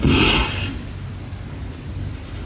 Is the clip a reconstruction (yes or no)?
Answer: no